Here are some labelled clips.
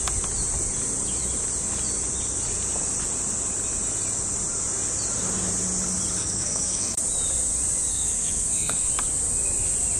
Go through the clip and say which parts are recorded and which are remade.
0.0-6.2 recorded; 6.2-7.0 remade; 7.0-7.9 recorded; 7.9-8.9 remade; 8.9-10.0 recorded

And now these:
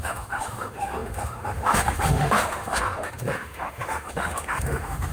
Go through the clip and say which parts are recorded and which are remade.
0.0-5.1 remade

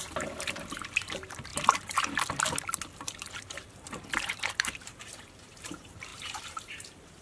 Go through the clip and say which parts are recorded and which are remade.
0.0-1.5 remade; 1.5-4.4 recorded; 4.4-7.2 remade

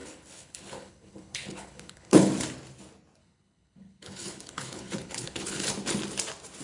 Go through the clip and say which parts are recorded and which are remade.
0.0-2.3 remade; 2.3-3.2 recorded; 3.2-5.7 remade; 5.7-6.6 recorded

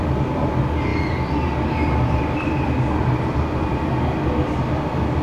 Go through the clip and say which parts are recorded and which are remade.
0.0-5.2 recorded

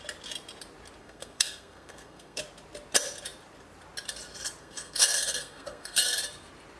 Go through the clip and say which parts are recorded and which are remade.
0.0-1.0 recorded; 1.0-2.4 remade; 2.4-4.6 recorded; 4.6-6.2 remade; 6.2-6.8 recorded

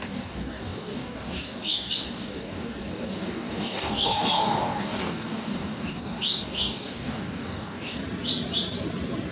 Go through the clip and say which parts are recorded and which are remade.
0.0-8.0 remade; 8.0-9.3 recorded